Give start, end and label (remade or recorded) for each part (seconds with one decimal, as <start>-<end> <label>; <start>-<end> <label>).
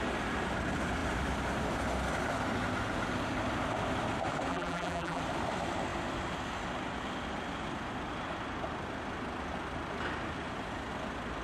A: 0.0-4.5 recorded; 4.5-5.2 remade; 5.2-11.4 recorded